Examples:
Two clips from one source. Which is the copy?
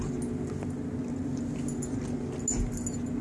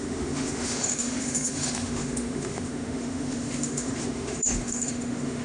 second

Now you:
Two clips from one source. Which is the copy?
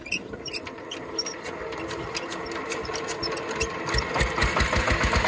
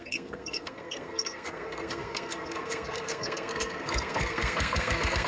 second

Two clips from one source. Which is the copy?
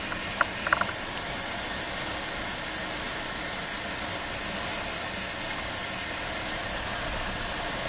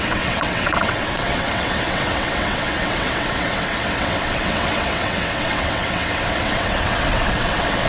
second